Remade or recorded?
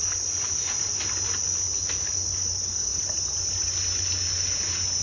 recorded